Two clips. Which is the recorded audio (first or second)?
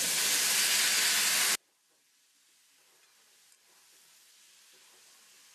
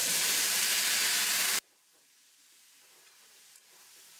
first